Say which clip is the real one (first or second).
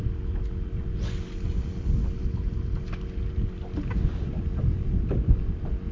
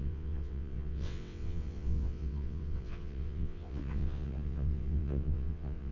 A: first